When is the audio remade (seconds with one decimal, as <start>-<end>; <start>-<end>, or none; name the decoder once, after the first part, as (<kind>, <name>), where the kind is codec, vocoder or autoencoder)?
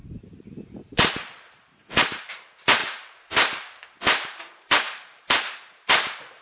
0.0-6.4 (vocoder, BigVGAN v2)